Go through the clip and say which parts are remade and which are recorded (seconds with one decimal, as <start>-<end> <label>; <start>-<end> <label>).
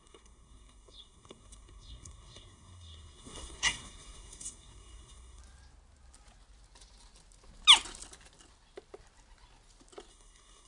0.0-5.4 remade; 5.4-10.1 recorded; 10.1-10.7 remade